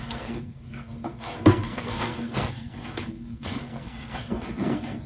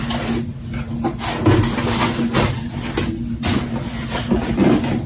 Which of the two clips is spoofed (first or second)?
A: first